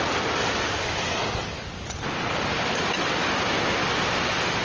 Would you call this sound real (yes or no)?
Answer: yes